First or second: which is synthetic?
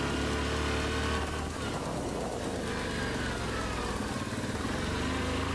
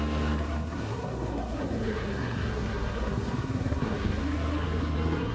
second